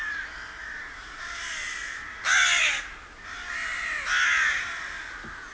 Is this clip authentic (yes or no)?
yes